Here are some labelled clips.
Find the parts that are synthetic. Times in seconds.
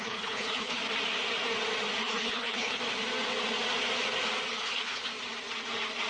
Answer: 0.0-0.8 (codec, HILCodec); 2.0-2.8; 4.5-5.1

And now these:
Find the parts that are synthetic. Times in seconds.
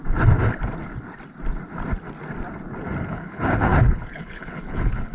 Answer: 3.1-5.1 (codec, HILCodec)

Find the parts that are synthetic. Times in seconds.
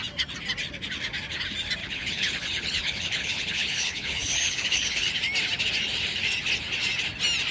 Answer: 1.8-5.1 (codec, HILCodec)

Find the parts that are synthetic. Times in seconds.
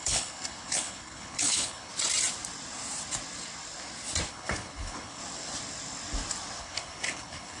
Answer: 0.0-1.9 (codec, HILCodec); 4.3-5.2; 6.6-7.6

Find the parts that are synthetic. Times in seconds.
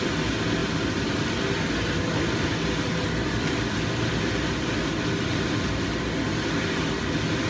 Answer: none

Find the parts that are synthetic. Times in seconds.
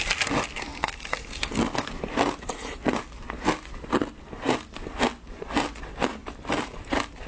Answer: none